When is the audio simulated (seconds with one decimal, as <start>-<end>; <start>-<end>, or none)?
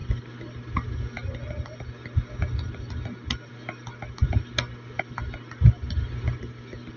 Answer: none